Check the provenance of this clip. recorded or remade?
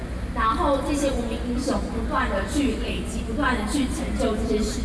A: recorded